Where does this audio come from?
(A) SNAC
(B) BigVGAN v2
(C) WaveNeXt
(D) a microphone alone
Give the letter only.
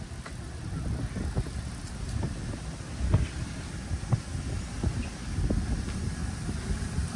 D